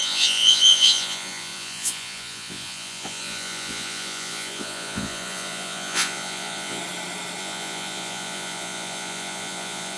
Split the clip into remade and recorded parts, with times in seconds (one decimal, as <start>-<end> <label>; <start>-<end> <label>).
0.0-6.8 remade; 6.8-7.4 recorded; 7.4-10.0 remade